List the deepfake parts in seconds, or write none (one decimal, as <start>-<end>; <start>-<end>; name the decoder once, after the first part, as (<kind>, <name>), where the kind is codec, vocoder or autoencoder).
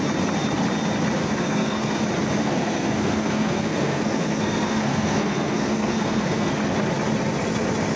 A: 1.2-2.0 (codec, SNAC); 2.4-6.5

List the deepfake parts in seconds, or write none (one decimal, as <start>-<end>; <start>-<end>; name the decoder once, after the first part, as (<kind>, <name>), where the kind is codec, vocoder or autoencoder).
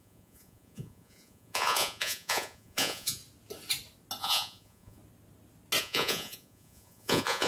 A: 0.0-3.2 (vocoder, Vocos); 4.2-5.0; 5.8-7.5